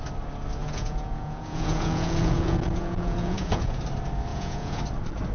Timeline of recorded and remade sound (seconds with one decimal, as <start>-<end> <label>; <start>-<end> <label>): 0.0-0.6 recorded; 0.6-3.8 remade; 3.8-4.3 recorded; 4.3-4.8 remade; 4.8-5.3 recorded